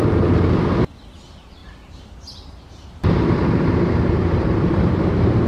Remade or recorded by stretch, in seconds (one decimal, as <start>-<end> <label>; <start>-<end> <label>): 0.0-1.6 recorded; 1.6-4.9 remade; 4.9-5.5 recorded